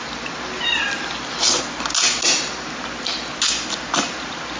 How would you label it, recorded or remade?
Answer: recorded